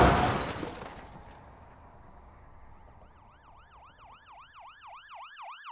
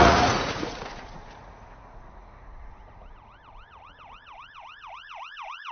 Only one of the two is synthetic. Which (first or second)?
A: second